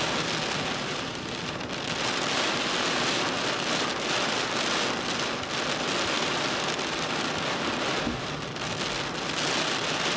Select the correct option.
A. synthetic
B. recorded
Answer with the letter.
B